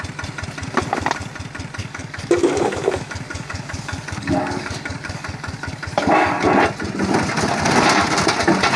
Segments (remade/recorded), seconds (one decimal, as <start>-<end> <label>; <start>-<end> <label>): 0.0-1.8 recorded; 1.8-6.4 remade; 6.4-8.8 recorded

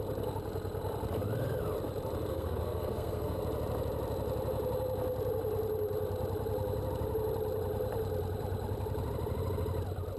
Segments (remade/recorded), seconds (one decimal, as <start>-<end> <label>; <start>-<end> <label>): 0.0-2.3 recorded; 2.3-3.4 remade; 3.4-10.2 recorded

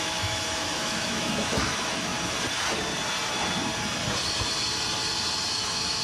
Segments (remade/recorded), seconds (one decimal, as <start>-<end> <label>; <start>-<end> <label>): 0.0-2.1 remade; 2.1-5.5 recorded; 5.5-6.0 remade

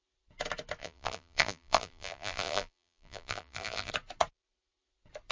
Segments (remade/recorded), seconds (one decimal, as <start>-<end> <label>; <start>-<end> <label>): 0.0-0.8 recorded; 0.8-3.9 remade; 3.9-5.3 recorded

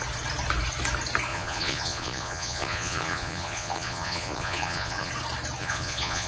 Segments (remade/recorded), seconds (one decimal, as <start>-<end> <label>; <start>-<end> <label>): 0.0-1.3 recorded; 1.3-5.1 remade; 5.1-5.6 recorded; 5.6-6.3 remade